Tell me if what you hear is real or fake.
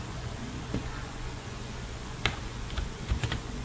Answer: fake